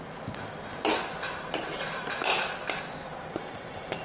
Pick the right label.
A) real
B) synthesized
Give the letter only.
A